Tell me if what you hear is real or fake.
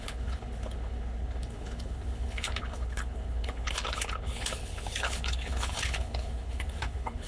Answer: fake